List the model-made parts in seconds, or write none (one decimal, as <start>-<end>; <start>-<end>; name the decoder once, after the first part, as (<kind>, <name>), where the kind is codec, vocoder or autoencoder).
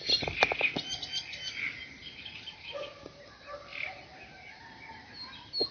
none